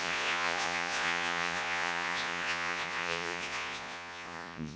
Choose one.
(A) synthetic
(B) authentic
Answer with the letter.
A